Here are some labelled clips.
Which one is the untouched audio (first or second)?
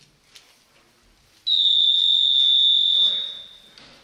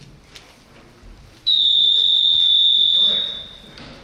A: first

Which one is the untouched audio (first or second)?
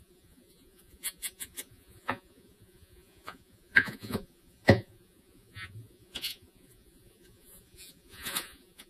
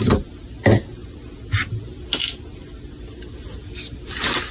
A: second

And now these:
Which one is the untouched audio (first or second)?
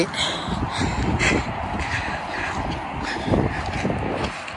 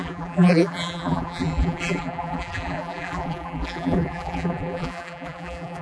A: first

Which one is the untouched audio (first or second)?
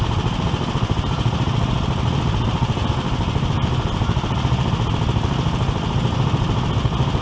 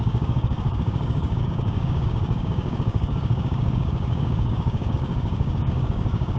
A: first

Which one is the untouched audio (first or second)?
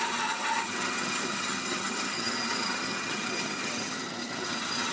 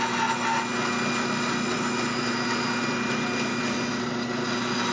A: second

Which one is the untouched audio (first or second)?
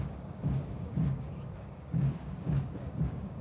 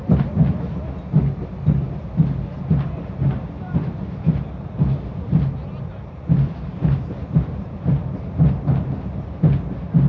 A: second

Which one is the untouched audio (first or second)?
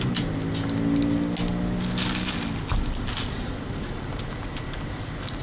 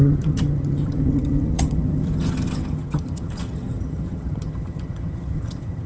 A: first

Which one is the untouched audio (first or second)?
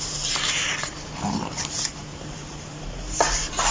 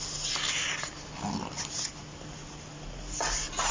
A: second